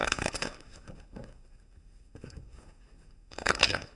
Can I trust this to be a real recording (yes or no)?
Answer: no